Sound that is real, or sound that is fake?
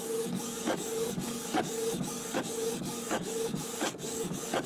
fake